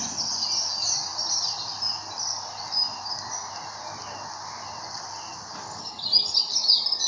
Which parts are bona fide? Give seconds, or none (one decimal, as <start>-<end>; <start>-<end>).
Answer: 0.0-7.1